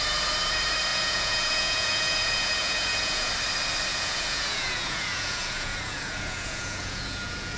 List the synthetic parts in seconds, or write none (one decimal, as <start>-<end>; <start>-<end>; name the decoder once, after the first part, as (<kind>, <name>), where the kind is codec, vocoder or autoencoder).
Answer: 0.9-3.3 (vocoder, Vocos); 3.9-7.6

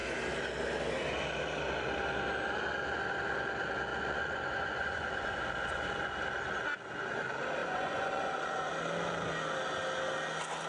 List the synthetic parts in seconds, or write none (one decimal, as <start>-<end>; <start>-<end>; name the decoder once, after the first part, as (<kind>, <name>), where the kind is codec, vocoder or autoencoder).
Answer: 3.9-5.4 (vocoder, Vocos); 7.6-8.7

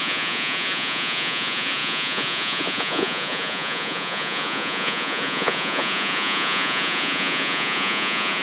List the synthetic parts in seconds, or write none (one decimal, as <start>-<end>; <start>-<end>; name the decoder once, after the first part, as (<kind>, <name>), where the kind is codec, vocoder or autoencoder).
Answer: 0.0-8.4 (vocoder, Vocos)

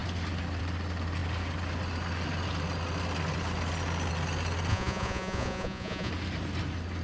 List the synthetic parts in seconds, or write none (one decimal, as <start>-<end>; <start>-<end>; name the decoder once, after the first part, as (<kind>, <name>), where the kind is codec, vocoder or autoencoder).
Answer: 4.7-6.1 (vocoder, Vocos)

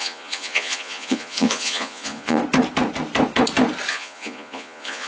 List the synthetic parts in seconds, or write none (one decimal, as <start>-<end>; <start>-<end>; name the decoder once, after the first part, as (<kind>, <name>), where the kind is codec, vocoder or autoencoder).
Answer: 0.0-2.4 (vocoder, Vocos); 3.9-5.1

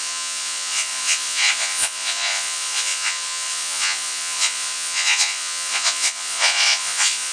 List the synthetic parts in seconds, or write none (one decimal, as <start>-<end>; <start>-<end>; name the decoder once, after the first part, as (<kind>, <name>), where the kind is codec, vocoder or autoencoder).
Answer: 0.0-7.3 (vocoder, Vocos)